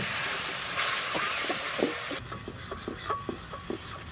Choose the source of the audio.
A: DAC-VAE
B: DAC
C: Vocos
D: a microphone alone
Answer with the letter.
D